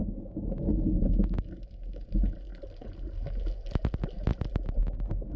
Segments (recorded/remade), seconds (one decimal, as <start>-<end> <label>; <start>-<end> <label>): 0.0-5.4 recorded